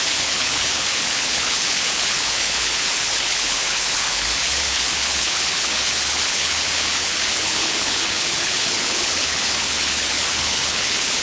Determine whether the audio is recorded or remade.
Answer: remade